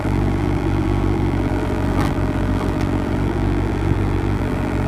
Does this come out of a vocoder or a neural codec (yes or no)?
yes